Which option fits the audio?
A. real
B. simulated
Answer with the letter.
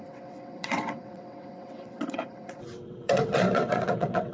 B